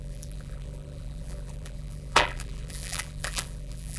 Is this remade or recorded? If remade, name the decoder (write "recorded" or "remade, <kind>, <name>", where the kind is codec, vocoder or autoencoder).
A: remade, vocoder, BigVGAN v2